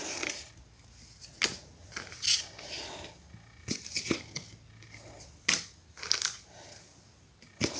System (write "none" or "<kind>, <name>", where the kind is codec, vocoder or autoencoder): none